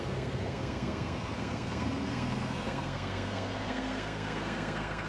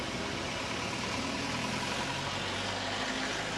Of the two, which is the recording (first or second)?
second